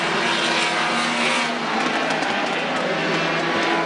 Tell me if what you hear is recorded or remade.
recorded